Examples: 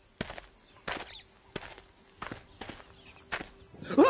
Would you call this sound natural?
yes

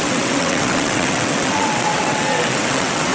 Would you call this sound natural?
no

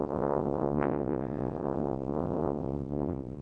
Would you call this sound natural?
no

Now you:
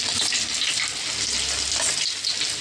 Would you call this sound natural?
yes